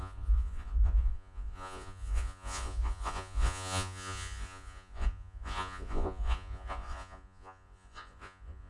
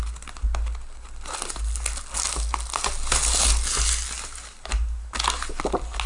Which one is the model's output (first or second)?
first